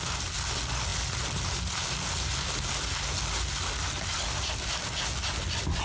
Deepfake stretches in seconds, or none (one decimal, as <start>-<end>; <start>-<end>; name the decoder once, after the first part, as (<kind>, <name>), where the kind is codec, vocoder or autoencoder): none

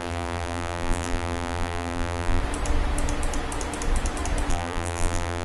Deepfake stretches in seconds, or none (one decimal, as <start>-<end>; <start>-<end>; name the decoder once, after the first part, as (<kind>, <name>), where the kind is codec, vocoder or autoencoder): 0.0-2.4 (vocoder, BigVGAN v2); 4.5-5.4

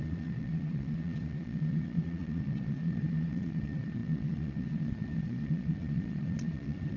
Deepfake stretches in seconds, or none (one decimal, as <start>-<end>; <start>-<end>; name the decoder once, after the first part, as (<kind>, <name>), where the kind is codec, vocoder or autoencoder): 0.0-7.0 (vocoder, Vocos)

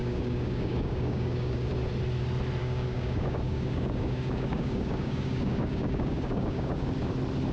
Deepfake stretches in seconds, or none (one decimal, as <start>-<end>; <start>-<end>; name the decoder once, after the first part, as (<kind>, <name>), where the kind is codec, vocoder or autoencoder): 0.0-1.7 (codec, DAC); 2.6-7.1